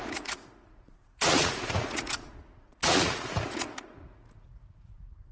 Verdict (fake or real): fake